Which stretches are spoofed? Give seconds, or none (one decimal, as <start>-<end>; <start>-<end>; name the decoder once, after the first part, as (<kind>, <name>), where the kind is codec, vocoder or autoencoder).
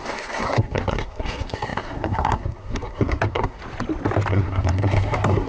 0.0-3.6 (codec, SNAC); 4.3-5.5